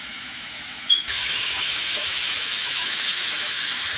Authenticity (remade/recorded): remade